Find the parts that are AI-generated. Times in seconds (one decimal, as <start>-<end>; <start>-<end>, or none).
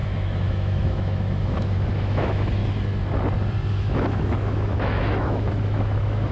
0.0-2.6; 3.7-6.3